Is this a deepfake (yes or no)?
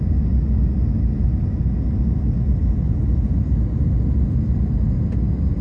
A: no